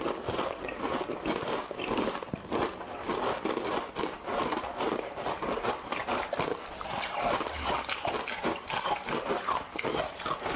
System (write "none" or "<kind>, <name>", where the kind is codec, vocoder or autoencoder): none